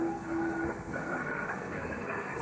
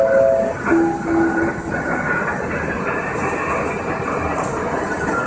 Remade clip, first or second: first